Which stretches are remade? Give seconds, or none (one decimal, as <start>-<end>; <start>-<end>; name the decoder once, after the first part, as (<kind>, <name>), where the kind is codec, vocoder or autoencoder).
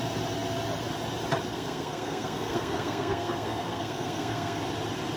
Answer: 1.5-4.6 (codec, SNAC)